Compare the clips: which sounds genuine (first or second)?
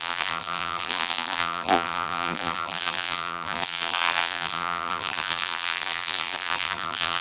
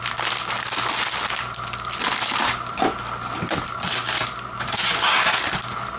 second